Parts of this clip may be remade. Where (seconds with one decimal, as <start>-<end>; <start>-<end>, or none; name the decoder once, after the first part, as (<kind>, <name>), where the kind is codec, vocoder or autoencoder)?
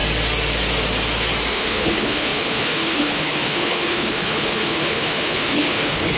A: 1.5-6.2 (codec, HILCodec)